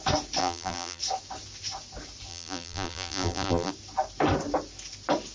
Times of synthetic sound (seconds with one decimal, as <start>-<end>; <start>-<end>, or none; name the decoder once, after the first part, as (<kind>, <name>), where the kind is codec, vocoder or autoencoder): 0.4-1.0 (vocoder, BigVGAN v2); 2.3-3.7